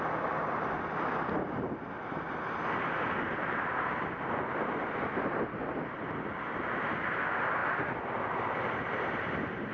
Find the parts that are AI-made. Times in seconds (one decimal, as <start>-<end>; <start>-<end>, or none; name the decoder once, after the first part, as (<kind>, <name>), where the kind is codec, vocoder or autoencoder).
none